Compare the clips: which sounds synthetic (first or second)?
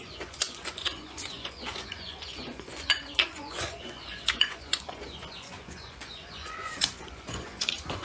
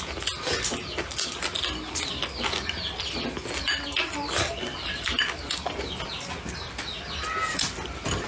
first